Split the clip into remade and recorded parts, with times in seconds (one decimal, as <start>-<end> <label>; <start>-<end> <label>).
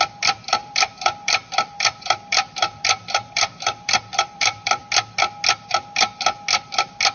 0.0-0.6 recorded; 0.6-4.9 remade; 4.9-7.1 recorded